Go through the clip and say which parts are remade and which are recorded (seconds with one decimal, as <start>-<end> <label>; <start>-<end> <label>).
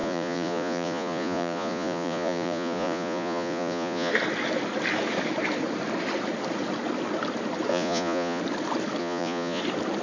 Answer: 0.0-4.1 remade; 4.1-7.7 recorded; 7.7-8.4 remade; 8.4-9.0 recorded; 9.0-9.6 remade; 9.6-10.0 recorded